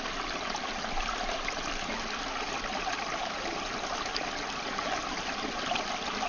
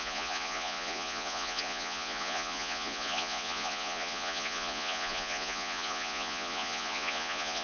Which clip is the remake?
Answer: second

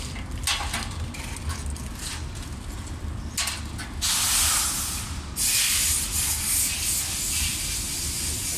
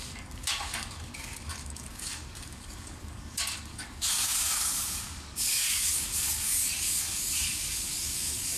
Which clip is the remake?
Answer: second